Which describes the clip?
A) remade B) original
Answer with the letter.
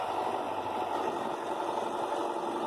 B